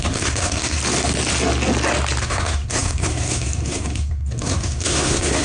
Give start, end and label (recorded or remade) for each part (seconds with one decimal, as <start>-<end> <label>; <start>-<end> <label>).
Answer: 0.0-0.8 remade; 0.8-2.2 recorded; 2.2-5.4 remade